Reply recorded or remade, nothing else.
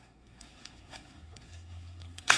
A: remade